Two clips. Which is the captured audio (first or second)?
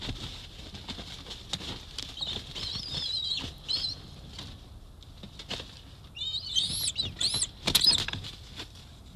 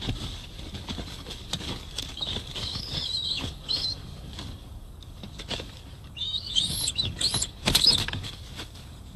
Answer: first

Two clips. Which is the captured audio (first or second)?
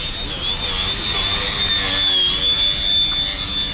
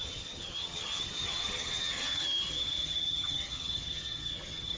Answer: first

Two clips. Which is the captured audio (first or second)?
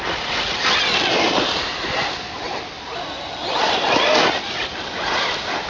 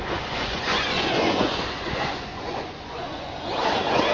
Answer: first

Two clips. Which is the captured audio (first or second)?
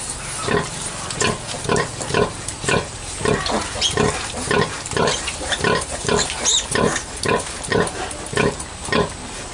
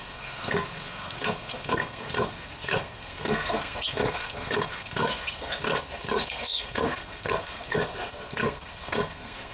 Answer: first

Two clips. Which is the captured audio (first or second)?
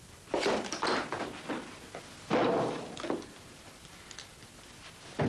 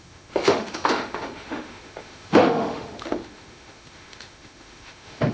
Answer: first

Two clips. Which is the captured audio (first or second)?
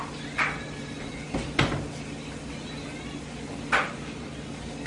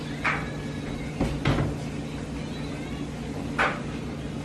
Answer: second